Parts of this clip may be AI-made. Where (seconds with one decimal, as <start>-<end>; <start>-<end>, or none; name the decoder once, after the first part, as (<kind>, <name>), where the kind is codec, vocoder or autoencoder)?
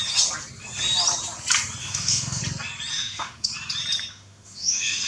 1.8-2.4 (autoencoder, DAC-VAE); 2.9-3.5; 4.1-5.1